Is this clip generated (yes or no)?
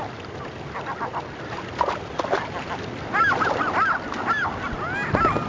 no